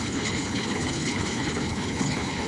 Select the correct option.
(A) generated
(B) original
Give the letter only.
A